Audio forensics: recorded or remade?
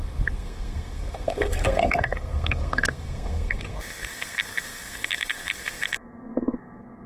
remade